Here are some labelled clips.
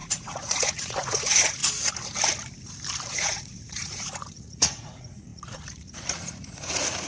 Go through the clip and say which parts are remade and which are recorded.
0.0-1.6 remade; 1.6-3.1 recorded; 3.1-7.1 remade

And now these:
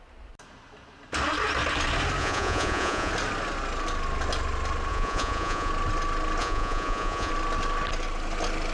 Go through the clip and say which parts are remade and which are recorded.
0.0-2.2 recorded; 2.2-3.1 remade; 3.1-4.9 recorded; 4.9-5.7 remade; 5.7-6.4 recorded; 6.4-7.3 remade; 7.3-8.7 recorded

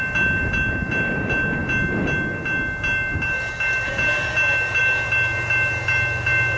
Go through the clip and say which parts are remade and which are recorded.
0.0-6.6 recorded

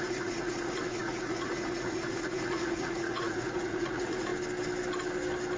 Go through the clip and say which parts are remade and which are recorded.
0.0-4.3 remade; 4.3-5.6 recorded

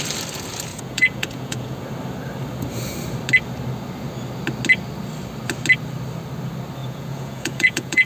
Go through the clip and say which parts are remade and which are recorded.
0.0-0.7 recorded; 0.7-1.8 remade; 1.8-6.8 recorded; 6.8-8.1 remade

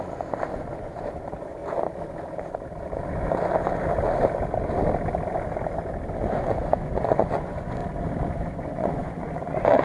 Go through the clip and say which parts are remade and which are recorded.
0.0-1.6 remade; 1.6-6.1 recorded; 6.1-7.8 remade; 7.8-8.3 recorded; 8.3-9.8 remade